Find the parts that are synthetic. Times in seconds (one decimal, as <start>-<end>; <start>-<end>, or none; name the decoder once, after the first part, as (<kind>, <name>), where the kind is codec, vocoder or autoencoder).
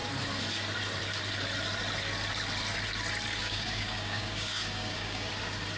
3.4-5.3 (codec, DAC)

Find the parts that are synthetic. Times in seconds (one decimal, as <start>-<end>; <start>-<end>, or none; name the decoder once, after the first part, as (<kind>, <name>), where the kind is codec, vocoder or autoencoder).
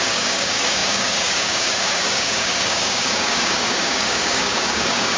0.0-5.2 (codec, DAC)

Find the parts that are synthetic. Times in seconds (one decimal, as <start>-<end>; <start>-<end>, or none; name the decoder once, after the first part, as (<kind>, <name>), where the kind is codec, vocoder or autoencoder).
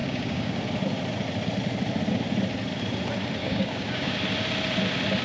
0.0-0.6 (codec, DAC); 3.4-4.2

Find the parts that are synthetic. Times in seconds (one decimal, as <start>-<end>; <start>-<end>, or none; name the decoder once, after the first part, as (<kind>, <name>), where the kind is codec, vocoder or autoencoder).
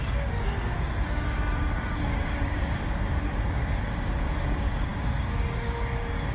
0.0-6.3 (codec, DAC)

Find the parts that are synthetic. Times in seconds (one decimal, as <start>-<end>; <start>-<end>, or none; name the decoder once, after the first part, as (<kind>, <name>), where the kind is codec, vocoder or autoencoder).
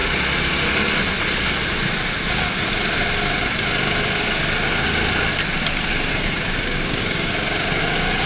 6.1-7.3 (codec, DAC)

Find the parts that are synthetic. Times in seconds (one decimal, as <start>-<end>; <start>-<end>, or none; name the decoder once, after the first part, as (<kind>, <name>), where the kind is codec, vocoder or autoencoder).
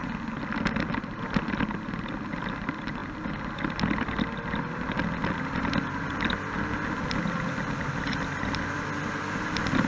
none